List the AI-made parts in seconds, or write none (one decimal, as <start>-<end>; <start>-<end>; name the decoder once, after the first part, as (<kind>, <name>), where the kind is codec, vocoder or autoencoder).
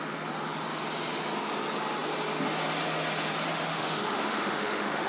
3.7-5.1 (autoencoder, DAC-VAE)